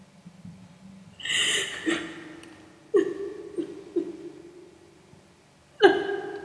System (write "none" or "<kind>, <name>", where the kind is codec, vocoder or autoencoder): none